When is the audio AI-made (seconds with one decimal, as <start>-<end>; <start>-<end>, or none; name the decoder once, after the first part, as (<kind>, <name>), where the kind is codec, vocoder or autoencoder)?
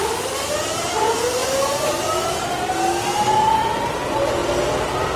none